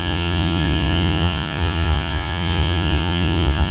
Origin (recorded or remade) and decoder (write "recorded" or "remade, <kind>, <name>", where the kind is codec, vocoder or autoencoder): remade, vocoder, Vocos